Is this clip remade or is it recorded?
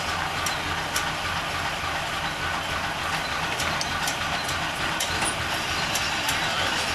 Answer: recorded